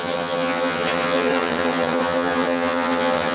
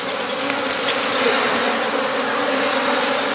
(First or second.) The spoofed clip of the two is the first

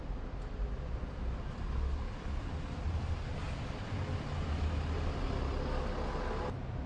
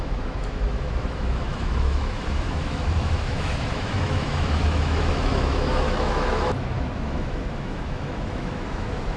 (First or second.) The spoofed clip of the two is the second